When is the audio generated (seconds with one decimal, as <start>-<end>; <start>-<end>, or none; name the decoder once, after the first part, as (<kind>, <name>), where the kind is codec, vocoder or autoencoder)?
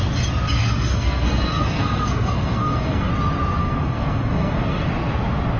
0.6-3.1 (codec, SNAC); 3.6-4.9